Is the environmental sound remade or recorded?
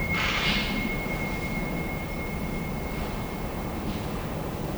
remade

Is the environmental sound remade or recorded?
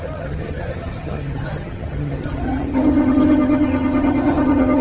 remade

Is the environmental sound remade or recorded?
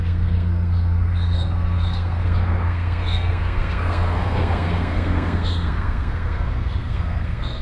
remade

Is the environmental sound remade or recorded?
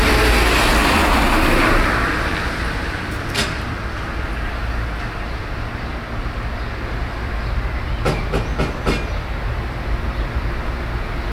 recorded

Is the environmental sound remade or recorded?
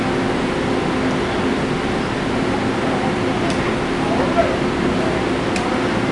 recorded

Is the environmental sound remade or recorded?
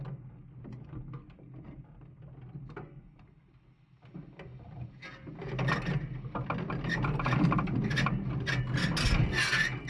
recorded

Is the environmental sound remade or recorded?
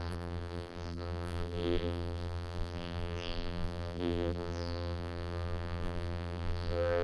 remade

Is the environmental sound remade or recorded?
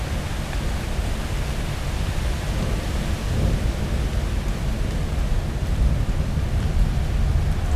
recorded